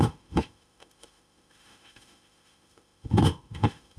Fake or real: fake